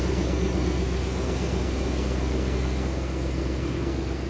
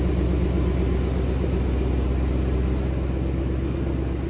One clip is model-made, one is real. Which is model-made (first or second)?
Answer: first